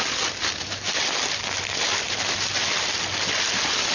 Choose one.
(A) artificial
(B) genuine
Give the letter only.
B